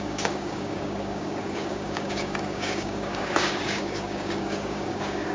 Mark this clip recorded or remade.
remade